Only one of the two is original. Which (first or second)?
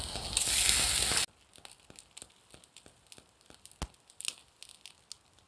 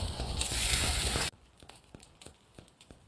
first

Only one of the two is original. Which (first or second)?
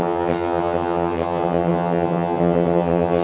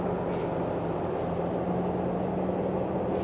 second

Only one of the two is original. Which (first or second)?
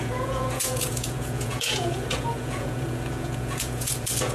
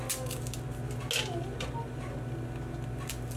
second